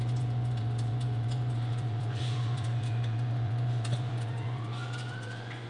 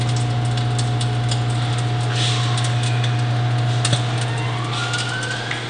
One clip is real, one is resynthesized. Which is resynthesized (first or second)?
first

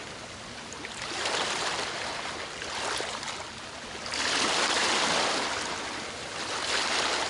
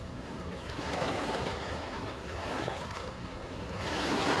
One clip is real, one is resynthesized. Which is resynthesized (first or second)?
second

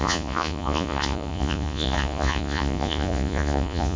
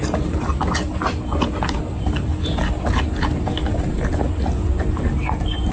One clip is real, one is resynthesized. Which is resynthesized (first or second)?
first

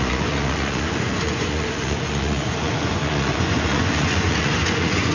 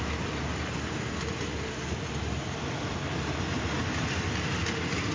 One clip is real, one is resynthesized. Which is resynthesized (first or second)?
first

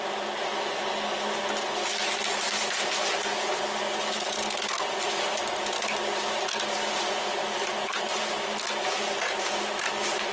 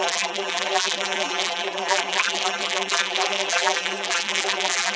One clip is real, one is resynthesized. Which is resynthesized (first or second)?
second